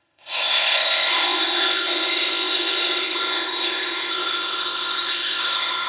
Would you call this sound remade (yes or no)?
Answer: yes